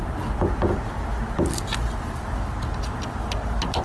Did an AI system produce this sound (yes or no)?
no